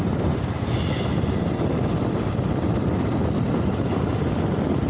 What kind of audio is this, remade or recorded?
recorded